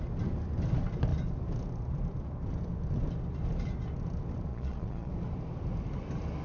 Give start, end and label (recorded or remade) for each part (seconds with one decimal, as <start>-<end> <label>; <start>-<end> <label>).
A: 0.0-4.5 recorded; 4.5-5.1 remade; 5.1-6.4 recorded